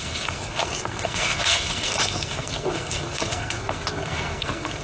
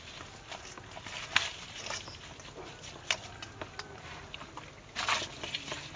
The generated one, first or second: first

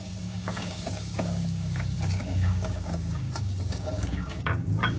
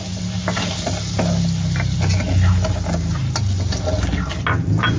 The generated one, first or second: first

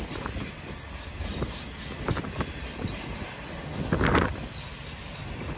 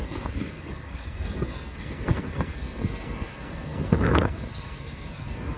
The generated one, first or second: second